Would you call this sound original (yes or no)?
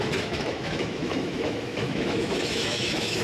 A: no